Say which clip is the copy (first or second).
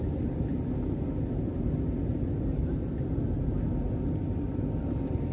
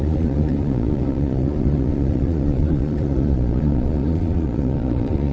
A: second